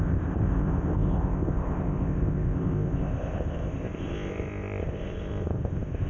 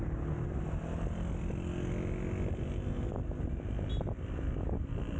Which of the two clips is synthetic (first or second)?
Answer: first